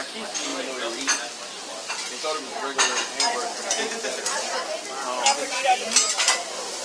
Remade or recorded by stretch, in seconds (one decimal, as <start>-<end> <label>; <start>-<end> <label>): 0.0-6.8 recorded

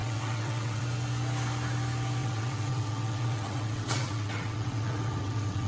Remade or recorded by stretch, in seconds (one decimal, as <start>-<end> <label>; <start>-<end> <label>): 0.0-0.8 remade; 0.8-2.2 recorded; 2.2-5.7 remade

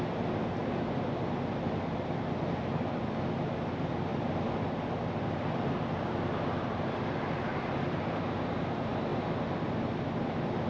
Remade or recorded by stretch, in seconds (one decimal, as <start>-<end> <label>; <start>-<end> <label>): 0.0-10.7 recorded

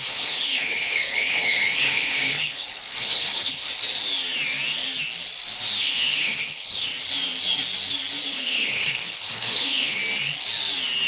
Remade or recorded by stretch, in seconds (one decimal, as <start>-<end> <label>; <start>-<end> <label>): 0.0-3.7 remade; 3.7-5.8 recorded; 5.8-6.9 remade; 6.9-8.3 recorded; 8.3-10.0 remade; 10.0-11.1 recorded

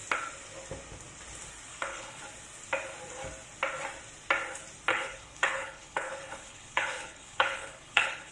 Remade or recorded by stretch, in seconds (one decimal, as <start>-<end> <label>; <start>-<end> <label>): 0.0-1.7 recorded; 1.7-2.2 remade; 2.2-4.9 recorded; 4.9-8.3 remade

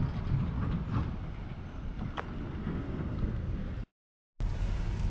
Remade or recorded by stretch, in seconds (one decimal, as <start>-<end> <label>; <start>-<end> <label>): 0.0-2.6 recorded; 2.6-3.7 remade; 3.7-5.1 recorded